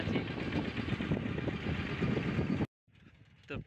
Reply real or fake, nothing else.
real